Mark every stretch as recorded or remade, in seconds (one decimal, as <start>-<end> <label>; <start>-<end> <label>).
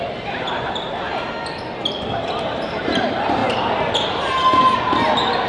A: 0.0-1.1 remade; 1.1-2.6 recorded; 2.6-3.4 remade; 3.4-5.5 recorded